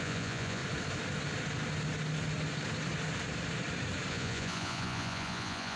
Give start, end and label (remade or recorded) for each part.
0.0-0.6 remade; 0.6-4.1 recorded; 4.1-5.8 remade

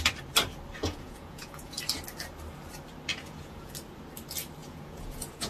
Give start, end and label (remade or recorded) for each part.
0.0-0.8 recorded; 0.8-1.8 remade; 1.8-3.1 recorded; 3.1-3.7 remade; 3.7-4.6 recorded; 4.6-5.5 remade